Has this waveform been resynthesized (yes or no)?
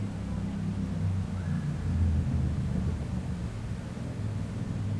no